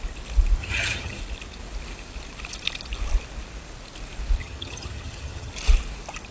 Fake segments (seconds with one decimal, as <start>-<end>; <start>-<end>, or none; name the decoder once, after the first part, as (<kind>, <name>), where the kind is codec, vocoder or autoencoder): 0.6-1.2 (vocoder, HiFi-GAN); 4.4-5.5